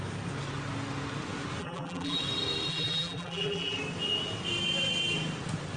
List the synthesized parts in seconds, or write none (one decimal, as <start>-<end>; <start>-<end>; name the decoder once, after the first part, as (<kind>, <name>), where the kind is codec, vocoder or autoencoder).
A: 1.6-2.2 (vocoder, BigVGAN v2); 2.7-3.8